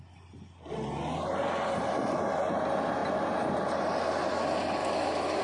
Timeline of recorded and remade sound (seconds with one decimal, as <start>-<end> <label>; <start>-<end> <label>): 0.0-4.8 recorded; 4.8-5.4 remade